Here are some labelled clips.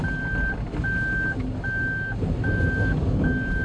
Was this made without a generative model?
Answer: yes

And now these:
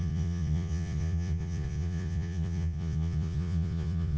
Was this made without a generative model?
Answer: no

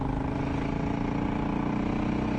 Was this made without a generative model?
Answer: yes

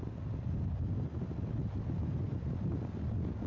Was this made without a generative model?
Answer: yes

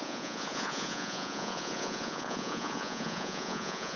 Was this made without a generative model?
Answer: no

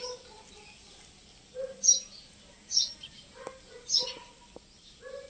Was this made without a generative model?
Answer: yes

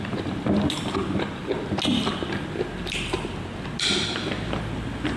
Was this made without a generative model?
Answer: yes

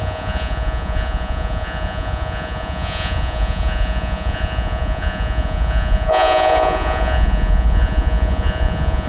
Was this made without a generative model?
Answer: no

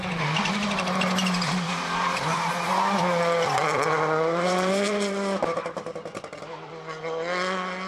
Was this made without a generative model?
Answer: yes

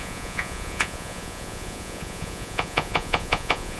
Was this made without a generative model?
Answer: no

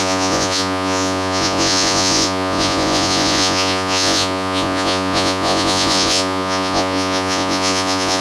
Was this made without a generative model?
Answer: no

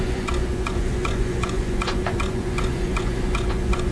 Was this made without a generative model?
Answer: no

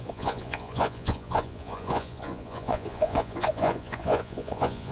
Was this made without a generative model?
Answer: no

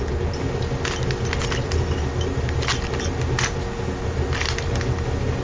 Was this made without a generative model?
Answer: yes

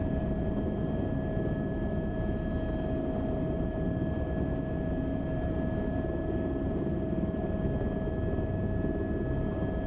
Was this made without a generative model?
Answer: yes